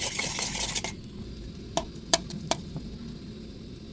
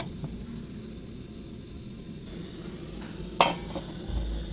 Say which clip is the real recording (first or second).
second